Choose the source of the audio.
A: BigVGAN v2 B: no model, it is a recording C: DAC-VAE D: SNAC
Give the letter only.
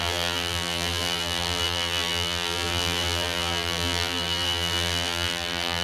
A